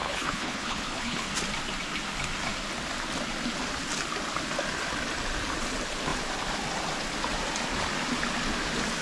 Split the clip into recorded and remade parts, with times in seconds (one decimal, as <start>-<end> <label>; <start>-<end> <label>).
0.0-1.3 remade; 1.3-9.0 recorded